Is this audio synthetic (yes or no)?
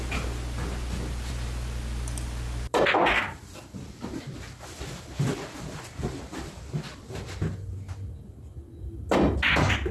no